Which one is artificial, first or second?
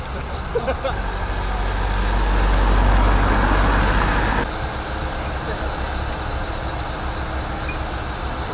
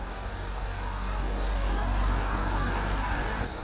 second